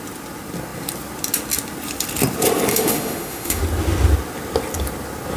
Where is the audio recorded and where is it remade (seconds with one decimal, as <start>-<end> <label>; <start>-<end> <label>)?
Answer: 0.0-2.7 recorded; 2.7-3.6 remade; 3.6-5.4 recorded